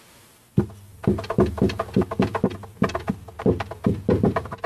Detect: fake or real real